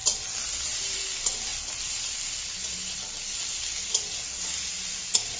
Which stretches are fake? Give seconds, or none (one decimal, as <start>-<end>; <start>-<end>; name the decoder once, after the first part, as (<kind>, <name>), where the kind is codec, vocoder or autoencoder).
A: none